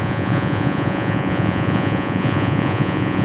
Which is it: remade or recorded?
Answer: remade